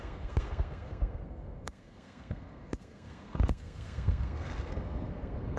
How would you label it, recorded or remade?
remade